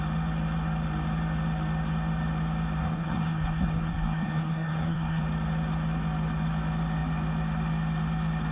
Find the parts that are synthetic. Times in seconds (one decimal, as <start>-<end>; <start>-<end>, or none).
2.8-5.2